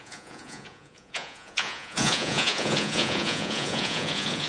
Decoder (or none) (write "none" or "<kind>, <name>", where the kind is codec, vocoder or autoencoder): vocoder, Vocos